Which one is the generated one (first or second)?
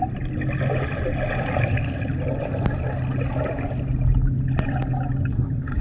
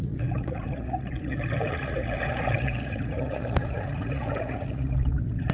second